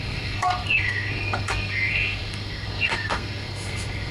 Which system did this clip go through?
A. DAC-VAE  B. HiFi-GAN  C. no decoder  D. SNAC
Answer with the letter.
D